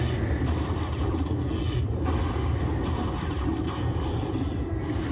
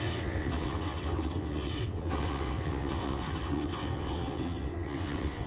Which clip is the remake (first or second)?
second